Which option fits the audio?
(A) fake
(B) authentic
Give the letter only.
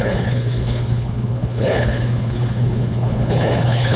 A